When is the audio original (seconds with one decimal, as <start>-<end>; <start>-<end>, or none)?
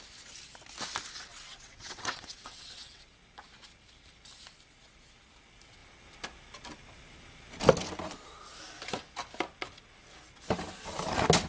0.0-1.3; 3.1-11.5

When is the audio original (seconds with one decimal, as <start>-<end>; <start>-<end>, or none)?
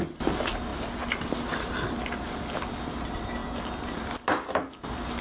0.0-5.2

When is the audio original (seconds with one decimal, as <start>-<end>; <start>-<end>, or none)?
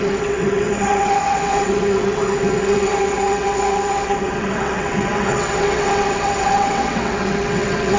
none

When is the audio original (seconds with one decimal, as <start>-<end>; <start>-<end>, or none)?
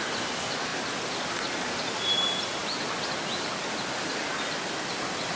0.0-5.4